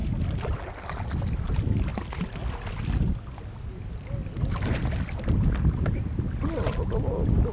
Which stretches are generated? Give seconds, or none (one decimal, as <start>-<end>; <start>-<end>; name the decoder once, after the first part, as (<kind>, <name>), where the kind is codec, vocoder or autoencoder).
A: none